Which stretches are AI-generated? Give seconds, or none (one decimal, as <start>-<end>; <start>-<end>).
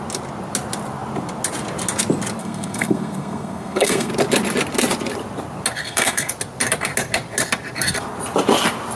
2.4-4.1; 5.8-6.3